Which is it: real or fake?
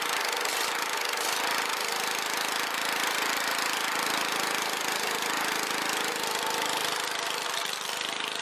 real